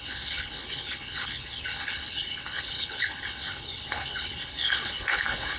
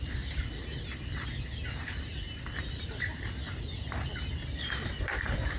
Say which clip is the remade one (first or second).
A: first